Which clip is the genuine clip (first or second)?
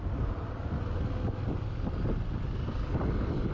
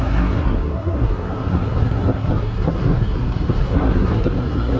first